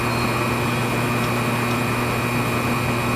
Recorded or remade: recorded